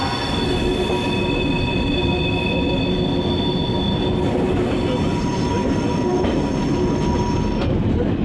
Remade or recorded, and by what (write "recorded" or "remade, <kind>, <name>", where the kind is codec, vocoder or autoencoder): recorded